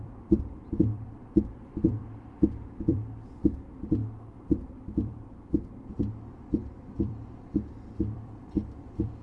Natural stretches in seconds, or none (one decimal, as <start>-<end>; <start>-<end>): 2.0-2.8